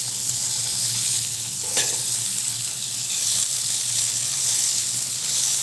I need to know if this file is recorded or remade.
remade